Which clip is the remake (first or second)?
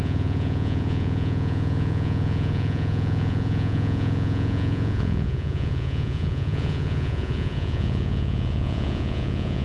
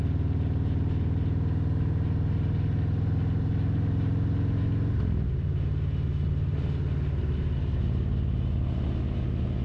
first